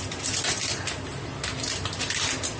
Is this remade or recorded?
recorded